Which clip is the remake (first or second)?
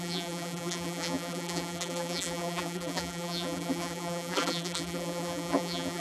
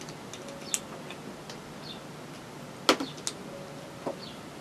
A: first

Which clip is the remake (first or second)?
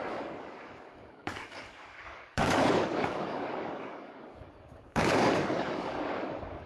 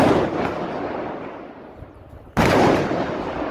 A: first